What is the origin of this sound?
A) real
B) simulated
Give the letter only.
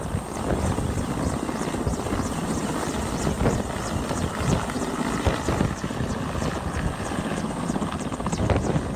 A